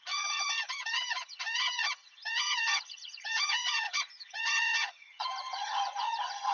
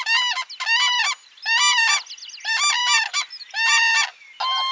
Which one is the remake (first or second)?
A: first